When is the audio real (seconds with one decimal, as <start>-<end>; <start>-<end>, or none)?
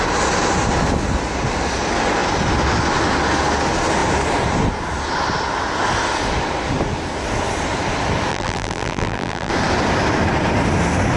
0.0-8.3; 9.5-11.2